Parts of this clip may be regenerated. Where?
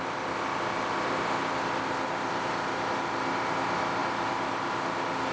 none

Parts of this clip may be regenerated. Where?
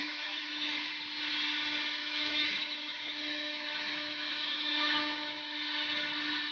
0.0-0.9 (autoencoder, DAC-VAE); 2.0-5.4